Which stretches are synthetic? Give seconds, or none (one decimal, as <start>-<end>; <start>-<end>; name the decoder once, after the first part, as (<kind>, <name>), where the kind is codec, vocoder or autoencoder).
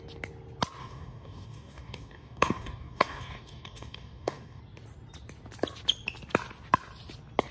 0.8-4.6 (codec, DAC)